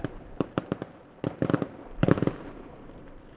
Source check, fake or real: fake